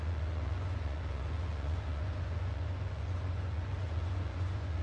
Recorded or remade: remade